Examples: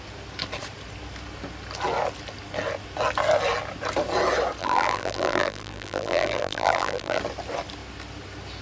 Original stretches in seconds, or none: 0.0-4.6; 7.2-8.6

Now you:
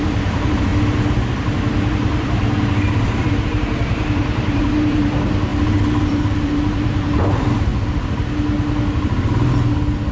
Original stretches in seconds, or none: 0.7-1.9; 7.7-10.1

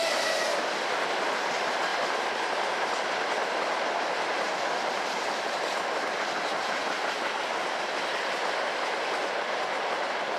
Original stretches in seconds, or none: 0.0-1.9; 4.5-6.8

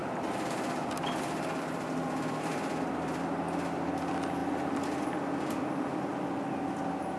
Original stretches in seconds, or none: 3.2-7.2

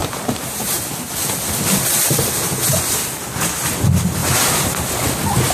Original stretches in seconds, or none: 0.9-4.2; 5.0-5.5

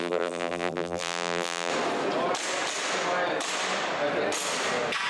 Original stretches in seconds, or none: 1.7-5.1

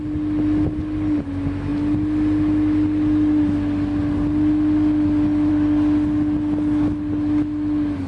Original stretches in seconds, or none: 0.0-8.1

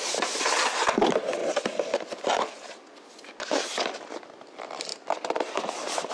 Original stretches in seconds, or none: 0.0-1.4; 3.1-4.9